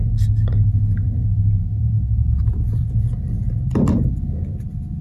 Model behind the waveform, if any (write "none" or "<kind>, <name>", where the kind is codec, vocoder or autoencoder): vocoder, BigVGAN v2